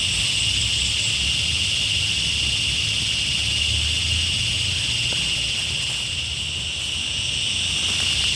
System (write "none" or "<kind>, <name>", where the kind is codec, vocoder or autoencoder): none